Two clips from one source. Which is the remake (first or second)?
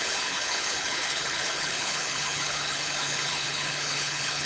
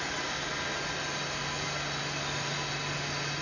first